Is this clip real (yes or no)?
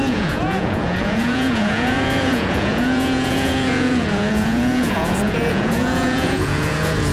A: no